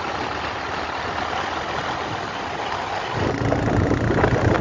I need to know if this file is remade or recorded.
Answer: recorded